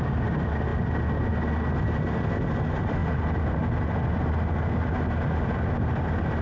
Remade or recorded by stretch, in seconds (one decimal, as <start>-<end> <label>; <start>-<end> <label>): 0.0-6.4 recorded